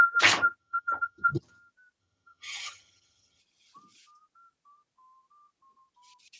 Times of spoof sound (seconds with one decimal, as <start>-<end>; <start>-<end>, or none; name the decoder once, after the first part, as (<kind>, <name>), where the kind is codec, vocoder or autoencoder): 0.6-1.4 (vocoder, HiFi-GAN); 2.0-3.4